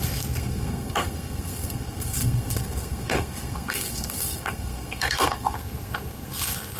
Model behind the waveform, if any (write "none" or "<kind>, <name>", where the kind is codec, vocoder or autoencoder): codec, SNAC